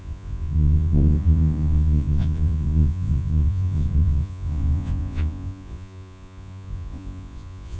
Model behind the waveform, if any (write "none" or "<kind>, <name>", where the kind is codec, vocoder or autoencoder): vocoder, Vocos